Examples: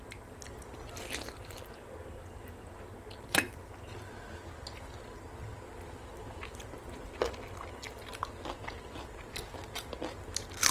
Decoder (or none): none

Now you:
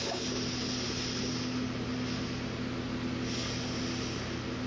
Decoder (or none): none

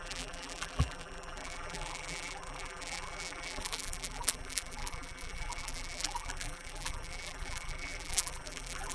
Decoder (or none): vocoder, BigVGAN v2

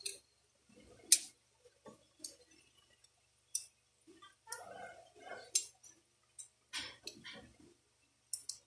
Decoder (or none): none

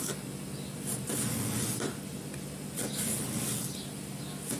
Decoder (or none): none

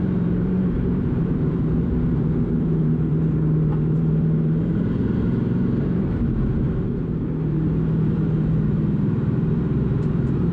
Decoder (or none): vocoder, BigVGAN v2